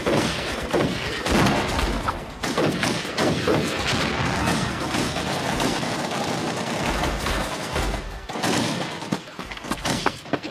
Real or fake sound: fake